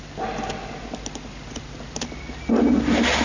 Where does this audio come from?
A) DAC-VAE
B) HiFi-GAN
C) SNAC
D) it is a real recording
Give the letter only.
D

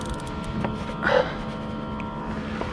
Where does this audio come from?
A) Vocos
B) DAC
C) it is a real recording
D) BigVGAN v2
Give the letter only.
C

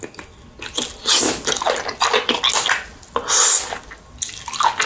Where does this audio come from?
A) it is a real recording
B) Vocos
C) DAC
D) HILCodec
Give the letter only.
A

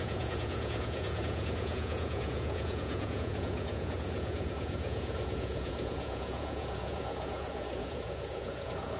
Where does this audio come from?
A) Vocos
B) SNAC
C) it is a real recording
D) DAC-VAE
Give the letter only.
A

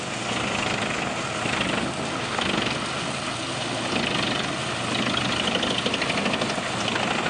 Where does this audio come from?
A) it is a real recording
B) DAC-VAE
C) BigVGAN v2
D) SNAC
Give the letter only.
A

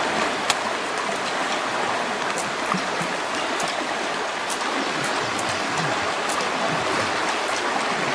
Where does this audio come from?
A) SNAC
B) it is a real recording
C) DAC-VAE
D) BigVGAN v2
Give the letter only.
B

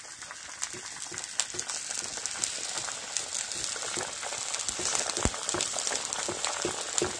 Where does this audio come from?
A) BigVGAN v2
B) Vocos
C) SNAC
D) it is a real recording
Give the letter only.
D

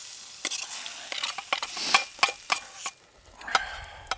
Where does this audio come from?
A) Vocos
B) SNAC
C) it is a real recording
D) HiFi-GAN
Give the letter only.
C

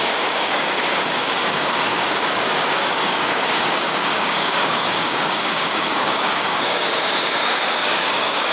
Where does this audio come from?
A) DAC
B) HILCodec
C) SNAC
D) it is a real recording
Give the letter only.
A